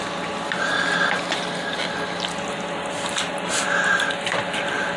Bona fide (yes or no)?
yes